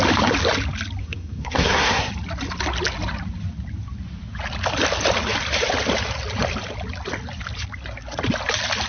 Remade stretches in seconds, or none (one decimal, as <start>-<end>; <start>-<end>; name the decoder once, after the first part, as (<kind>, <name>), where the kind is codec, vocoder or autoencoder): 1.0-2.1 (codec, SNAC)